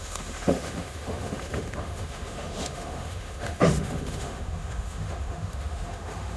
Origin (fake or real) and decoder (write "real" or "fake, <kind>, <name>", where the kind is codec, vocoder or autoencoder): fake, autoencoder, DAC-VAE